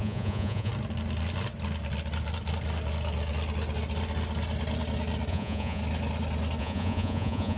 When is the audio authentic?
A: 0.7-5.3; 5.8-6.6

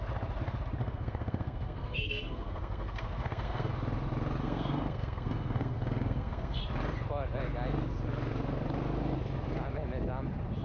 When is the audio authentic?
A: 0.0-0.8; 3.7-4.4; 6.6-10.6

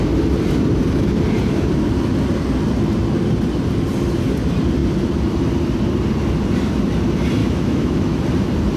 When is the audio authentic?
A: 0.0-7.4; 8.2-8.8